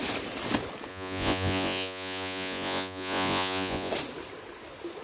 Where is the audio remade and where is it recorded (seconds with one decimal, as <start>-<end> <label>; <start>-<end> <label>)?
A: 0.0-0.9 recorded; 0.9-3.9 remade; 3.9-5.0 recorded